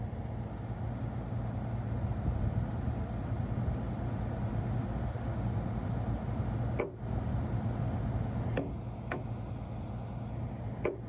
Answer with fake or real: real